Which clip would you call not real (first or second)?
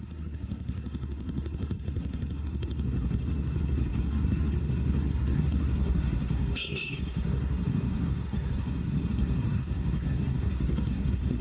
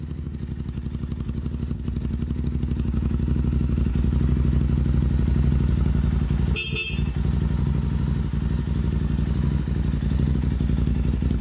first